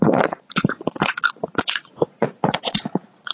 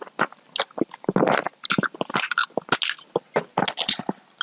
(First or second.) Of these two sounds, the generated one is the first